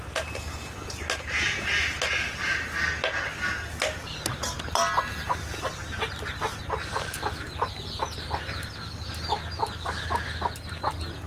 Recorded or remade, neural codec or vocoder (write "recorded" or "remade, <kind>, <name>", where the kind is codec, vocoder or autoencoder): recorded